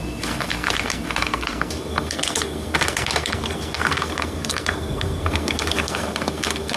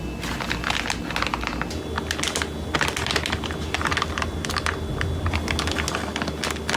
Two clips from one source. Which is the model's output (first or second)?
first